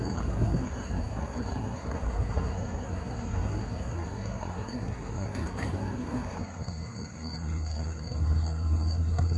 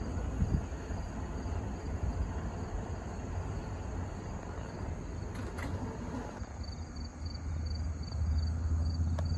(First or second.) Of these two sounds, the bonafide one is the second